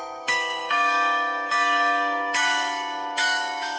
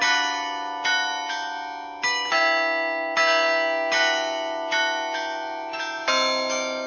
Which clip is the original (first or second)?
second